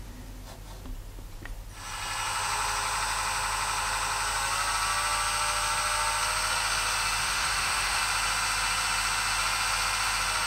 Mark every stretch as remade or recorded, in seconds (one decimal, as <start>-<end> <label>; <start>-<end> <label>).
0.0-7.2 recorded; 7.2-8.0 remade; 8.0-10.5 recorded